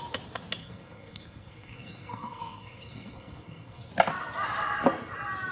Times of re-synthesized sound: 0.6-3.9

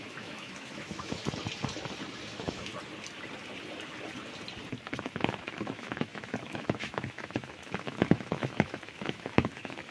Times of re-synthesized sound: 0.0-1.2; 2.3-2.7; 5.0-9.9

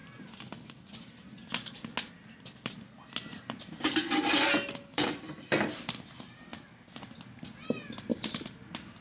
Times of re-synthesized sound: 3.3-6.5

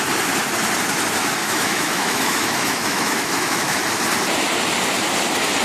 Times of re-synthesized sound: 1.4-3.8

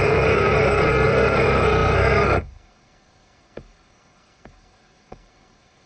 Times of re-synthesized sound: 0.0-5.9

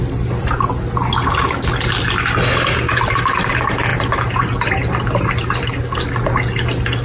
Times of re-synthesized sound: 1.0-1.7

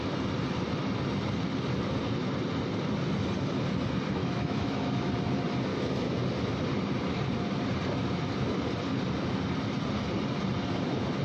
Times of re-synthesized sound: 4.2-5.1; 5.7-6.2